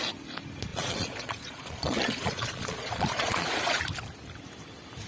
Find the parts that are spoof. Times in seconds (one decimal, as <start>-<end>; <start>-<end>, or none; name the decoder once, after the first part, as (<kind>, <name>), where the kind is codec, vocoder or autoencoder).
0.7-3.8 (vocoder, Vocos)